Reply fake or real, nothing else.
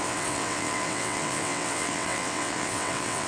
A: fake